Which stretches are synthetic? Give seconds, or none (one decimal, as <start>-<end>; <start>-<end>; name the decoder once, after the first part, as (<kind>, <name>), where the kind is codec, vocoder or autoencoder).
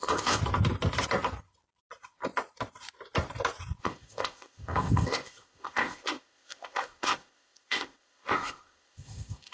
0.0-0.4 (codec, ZipCodec); 3.8-9.5